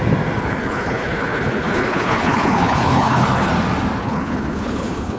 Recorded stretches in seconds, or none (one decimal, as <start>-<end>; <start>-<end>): 0.0-0.4; 3.5-4.0

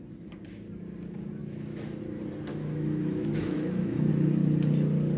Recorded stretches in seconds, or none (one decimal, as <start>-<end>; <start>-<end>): 0.0-1.4; 2.0-2.5; 4.1-5.2

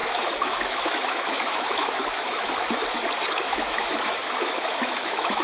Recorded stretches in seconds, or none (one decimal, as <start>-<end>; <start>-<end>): 2.8-3.4

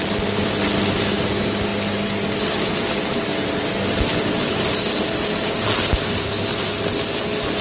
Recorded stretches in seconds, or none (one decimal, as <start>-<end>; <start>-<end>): 0.0-7.6

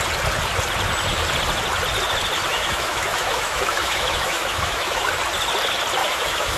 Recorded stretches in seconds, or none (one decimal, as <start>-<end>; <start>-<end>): 0.0-2.5; 5.1-6.0

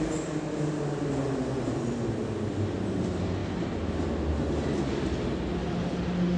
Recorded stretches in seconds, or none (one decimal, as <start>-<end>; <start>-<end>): 0.0-6.4

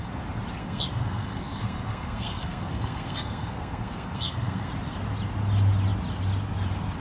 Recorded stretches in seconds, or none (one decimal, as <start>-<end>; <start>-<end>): 0.0-0.6; 4.7-7.0

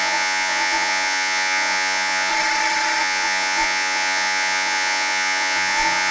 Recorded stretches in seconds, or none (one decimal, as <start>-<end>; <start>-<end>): 2.3-3.0